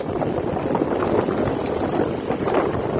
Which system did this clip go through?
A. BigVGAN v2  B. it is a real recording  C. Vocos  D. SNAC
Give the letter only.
B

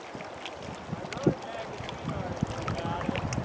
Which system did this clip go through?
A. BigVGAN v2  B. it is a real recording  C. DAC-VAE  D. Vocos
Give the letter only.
B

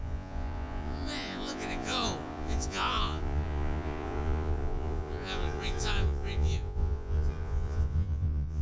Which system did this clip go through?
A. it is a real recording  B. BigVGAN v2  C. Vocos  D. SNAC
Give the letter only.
C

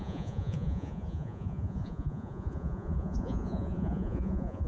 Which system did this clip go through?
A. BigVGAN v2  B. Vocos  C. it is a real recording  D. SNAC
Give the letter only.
B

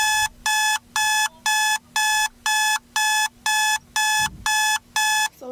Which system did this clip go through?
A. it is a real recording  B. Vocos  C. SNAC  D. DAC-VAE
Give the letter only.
A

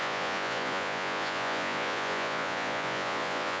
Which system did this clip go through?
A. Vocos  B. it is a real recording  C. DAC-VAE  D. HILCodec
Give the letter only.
A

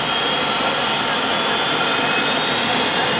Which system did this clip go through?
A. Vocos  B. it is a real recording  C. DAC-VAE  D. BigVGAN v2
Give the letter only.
B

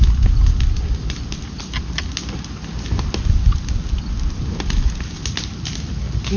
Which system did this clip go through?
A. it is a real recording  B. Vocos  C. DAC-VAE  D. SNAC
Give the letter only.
A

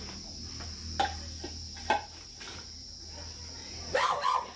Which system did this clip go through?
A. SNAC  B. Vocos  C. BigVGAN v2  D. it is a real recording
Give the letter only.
D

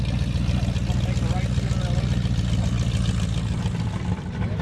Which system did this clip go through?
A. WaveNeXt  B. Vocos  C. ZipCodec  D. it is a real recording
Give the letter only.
D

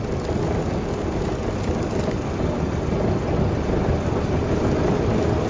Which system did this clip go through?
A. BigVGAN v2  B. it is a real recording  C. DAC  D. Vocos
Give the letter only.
B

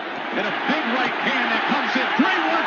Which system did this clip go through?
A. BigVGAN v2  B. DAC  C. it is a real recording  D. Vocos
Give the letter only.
C